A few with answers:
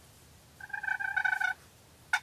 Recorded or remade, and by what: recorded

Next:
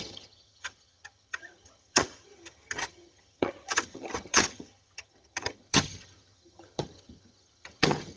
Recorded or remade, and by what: remade, vocoder, HiFi-GAN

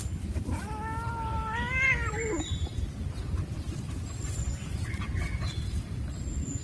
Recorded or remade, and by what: recorded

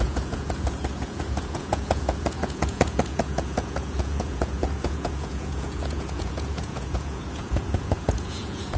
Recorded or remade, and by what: remade, vocoder, Vocos